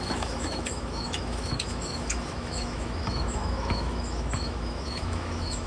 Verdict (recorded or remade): remade